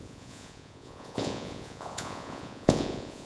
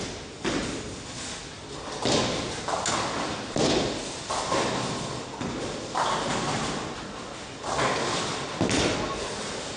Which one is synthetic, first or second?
first